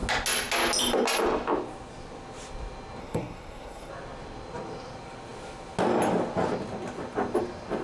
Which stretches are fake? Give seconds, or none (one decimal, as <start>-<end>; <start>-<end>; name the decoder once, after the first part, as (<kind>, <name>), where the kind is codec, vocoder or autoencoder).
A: 3.0-3.9 (codec, SNAC)